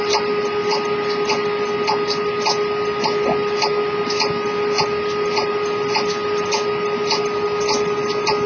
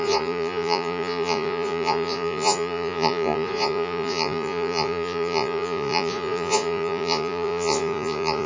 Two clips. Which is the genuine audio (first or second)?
first